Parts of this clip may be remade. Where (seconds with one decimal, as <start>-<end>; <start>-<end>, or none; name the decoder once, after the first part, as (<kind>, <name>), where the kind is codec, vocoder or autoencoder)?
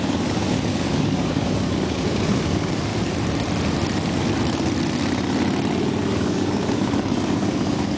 0.0-2.9 (codec, DAC); 6.0-8.0